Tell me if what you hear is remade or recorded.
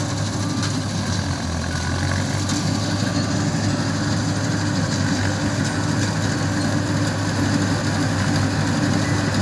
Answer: recorded